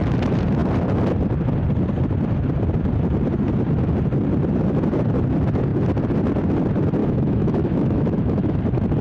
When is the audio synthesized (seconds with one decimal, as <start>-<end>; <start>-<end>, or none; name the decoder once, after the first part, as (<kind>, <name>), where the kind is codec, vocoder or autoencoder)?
7.0-8.6 (autoencoder, DAC-VAE)

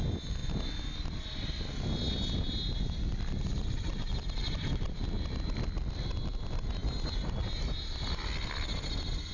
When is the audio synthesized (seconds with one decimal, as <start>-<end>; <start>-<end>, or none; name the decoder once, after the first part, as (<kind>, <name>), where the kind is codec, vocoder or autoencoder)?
none

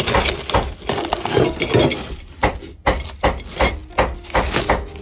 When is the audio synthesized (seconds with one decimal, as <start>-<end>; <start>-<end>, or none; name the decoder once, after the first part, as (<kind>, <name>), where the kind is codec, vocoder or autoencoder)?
none

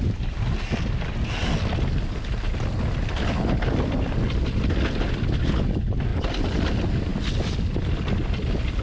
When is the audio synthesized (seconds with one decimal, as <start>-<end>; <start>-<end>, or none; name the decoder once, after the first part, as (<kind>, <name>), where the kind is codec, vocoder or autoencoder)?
none

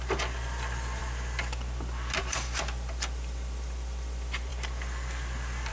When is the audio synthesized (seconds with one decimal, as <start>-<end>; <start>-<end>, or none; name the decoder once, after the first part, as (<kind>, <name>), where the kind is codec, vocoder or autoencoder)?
0.0-1.0 (vocoder, BigVGAN v2); 2.2-4.5